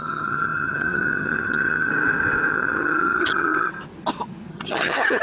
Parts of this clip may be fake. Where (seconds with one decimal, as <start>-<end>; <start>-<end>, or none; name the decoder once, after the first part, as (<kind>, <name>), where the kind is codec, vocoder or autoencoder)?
0.0-1.9 (vocoder, HiFi-GAN); 2.5-3.7; 4.5-5.2